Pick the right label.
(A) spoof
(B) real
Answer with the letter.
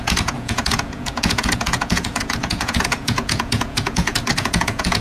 A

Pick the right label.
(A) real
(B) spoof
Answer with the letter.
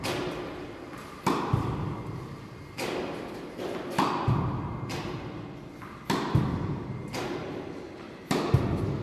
A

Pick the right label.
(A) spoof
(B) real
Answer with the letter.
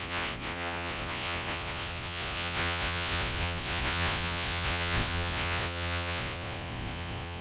A